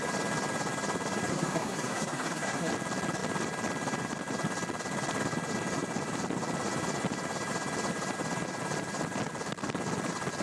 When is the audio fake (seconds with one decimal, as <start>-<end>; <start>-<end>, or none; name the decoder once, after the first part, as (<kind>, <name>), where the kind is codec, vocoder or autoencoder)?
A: 1.3-2.7 (codec, SNAC)